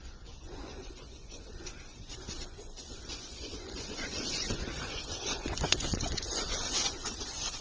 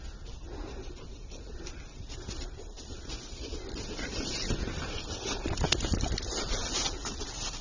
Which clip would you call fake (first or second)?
first